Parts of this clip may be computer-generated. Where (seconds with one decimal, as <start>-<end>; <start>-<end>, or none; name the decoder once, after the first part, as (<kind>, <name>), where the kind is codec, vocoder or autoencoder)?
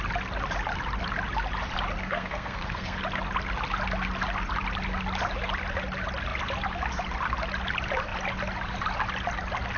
2.0-3.0 (codec, SNAC)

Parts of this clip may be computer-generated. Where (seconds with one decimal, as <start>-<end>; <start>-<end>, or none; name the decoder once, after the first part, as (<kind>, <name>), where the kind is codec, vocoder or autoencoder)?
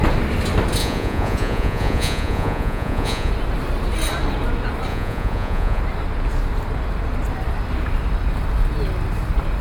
0.8-3.3 (vocoder, Vocos); 4.9-5.8